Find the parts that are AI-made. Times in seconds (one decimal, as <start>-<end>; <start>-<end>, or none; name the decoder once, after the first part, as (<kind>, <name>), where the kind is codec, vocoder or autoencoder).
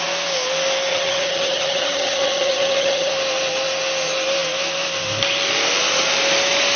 0.9-3.1 (vocoder, HiFi-GAN)